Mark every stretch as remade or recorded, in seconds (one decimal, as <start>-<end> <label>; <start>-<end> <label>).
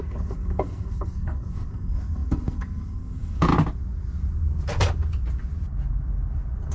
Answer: 0.0-3.5 remade; 3.5-6.7 recorded